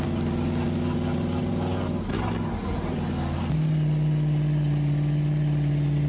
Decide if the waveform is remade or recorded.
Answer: recorded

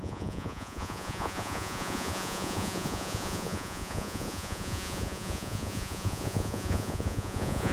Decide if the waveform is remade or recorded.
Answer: remade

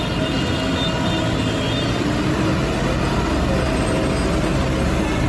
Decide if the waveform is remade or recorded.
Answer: recorded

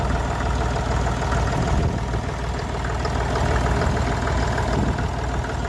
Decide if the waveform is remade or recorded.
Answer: recorded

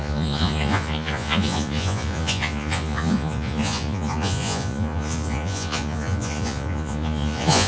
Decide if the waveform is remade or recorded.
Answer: remade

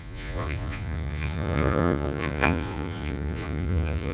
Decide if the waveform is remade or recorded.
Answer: remade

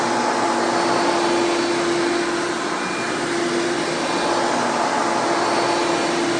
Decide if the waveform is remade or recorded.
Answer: recorded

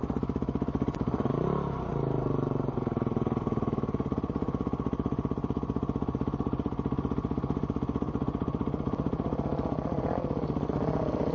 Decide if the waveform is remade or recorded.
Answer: recorded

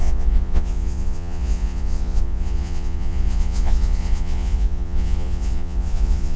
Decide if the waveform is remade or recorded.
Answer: remade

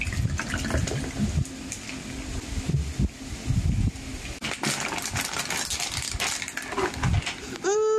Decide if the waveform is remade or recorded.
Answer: recorded